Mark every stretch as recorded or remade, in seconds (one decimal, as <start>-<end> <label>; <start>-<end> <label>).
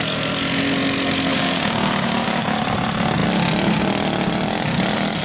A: 0.0-1.3 recorded; 1.3-2.4 remade; 2.4-5.2 recorded